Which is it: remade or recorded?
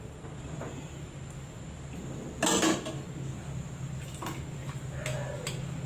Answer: recorded